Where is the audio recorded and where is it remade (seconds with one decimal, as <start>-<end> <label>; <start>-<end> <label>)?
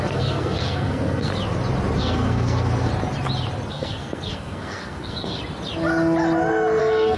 0.0-1.3 remade; 1.3-2.0 recorded; 2.0-2.9 remade; 2.9-3.7 recorded; 3.7-5.4 remade; 5.4-6.8 recorded; 6.8-7.2 remade